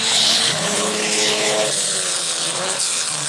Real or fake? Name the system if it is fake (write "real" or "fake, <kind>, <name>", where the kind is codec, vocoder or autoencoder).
fake, codec, HILCodec